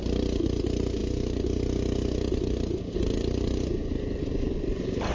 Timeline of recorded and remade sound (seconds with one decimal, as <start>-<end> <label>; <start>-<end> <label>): 0.0-5.1 recorded